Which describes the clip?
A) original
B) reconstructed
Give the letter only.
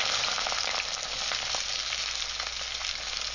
A